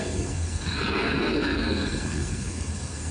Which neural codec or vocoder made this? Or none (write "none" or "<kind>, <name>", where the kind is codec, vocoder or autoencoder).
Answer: codec, SNAC